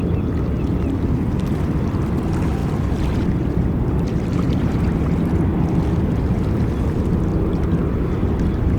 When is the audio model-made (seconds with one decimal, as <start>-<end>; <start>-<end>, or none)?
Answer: none